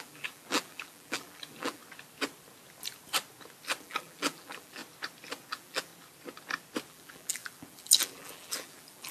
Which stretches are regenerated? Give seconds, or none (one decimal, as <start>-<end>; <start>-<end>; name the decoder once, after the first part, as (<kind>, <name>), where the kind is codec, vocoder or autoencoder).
0.0-1.8 (vocoder, BigVGAN v2); 3.8-4.8; 5.5-5.9; 6.9-9.1